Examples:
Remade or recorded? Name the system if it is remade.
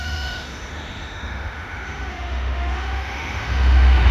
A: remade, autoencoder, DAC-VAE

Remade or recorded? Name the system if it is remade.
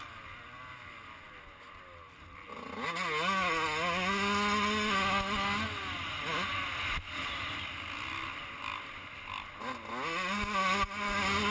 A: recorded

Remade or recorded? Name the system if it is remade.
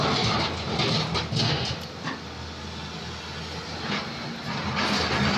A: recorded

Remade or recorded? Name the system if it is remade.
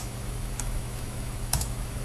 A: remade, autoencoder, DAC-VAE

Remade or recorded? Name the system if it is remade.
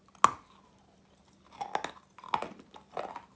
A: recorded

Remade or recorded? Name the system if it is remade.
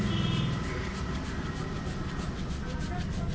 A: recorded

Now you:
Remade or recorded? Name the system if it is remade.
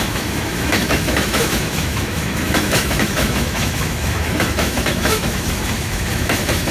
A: remade, autoencoder, DAC-VAE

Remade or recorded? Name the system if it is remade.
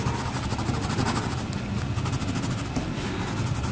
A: recorded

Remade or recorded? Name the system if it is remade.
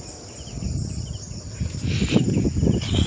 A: recorded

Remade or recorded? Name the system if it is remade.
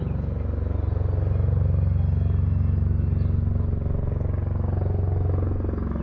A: recorded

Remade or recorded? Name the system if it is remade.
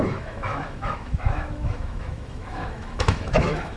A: remade, autoencoder, DAC-VAE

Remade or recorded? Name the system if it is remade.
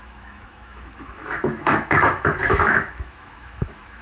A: remade, autoencoder, DAC-VAE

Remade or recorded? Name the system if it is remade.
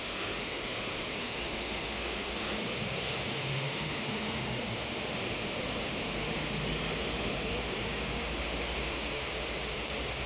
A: remade, autoencoder, DAC-VAE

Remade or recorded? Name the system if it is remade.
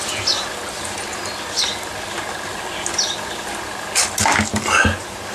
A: recorded